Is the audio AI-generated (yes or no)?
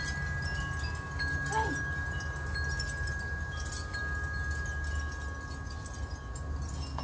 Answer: no